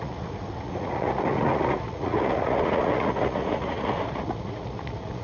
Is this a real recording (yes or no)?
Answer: no